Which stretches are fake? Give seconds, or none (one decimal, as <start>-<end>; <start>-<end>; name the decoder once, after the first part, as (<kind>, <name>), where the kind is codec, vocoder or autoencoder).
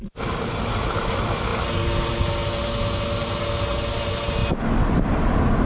none